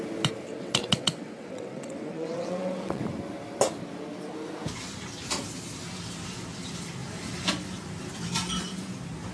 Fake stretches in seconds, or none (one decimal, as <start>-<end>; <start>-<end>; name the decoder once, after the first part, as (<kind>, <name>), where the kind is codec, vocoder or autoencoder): 0.5-3.0 (vocoder, WaveNeXt)